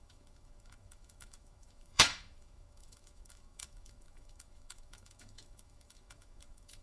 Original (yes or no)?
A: no